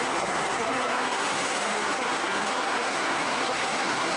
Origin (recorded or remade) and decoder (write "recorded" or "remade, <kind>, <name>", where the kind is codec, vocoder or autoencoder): remade, codec, SNAC